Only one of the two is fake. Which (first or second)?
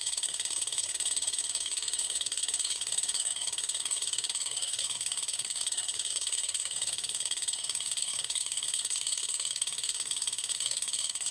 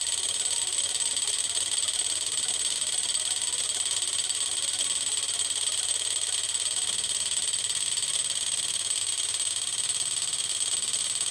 first